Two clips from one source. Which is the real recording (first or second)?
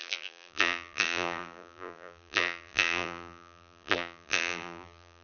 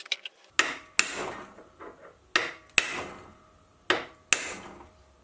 second